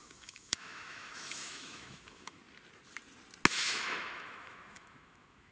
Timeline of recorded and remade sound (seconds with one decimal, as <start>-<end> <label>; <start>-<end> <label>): 0.0-2.4 remade; 2.4-3.5 recorded; 3.5-5.5 remade